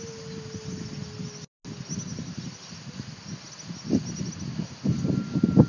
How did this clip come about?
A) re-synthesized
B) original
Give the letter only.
B